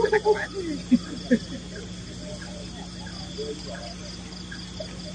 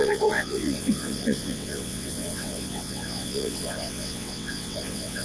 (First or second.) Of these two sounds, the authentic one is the first